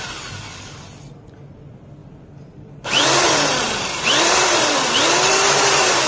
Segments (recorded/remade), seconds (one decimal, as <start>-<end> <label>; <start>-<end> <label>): 0.0-2.0 recorded; 2.0-6.1 remade